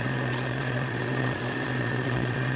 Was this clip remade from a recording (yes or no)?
yes